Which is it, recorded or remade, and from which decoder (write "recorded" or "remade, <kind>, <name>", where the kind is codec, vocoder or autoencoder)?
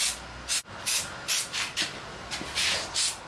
recorded